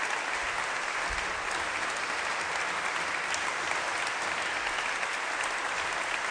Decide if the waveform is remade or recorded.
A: recorded